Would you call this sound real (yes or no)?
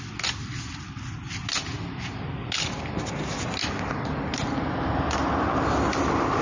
yes